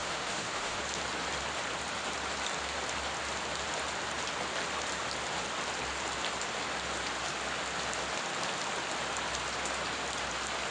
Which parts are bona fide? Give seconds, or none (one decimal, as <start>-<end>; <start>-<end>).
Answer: 0.8-10.7